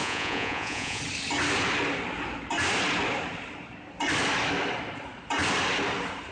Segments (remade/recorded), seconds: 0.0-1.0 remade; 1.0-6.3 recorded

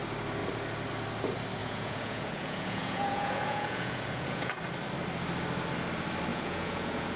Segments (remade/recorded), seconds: 0.0-1.6 recorded; 1.6-4.6 remade; 4.6-6.3 recorded; 6.3-7.2 remade

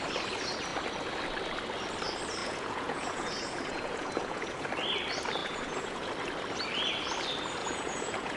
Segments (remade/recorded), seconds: 0.0-2.4 recorded; 2.4-4.7 remade; 4.7-5.4 recorded; 5.4-6.1 remade; 6.1-7.6 recorded; 7.6-8.4 remade

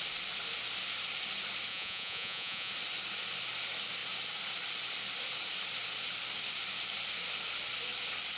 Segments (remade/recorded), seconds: 0.0-1.7 recorded; 1.7-2.7 remade; 2.7-8.4 recorded

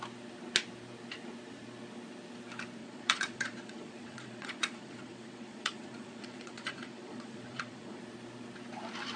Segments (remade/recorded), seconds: 0.0-2.8 recorded; 2.8-8.0 remade; 8.0-9.2 recorded

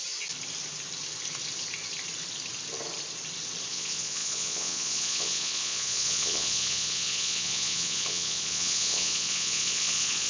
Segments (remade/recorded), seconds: 0.0-3.7 recorded; 3.7-10.3 remade

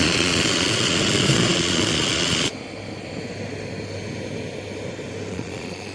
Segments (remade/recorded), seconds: 0.0-2.5 remade; 2.5-5.3 recorded; 5.3-5.9 remade